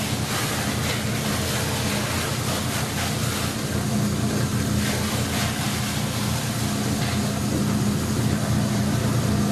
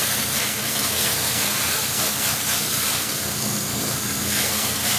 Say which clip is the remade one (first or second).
second